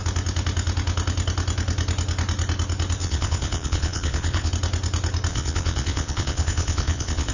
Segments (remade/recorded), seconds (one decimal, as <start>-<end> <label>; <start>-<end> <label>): 0.0-3.0 recorded; 3.0-4.5 remade; 4.5-5.3 recorded; 5.3-7.3 remade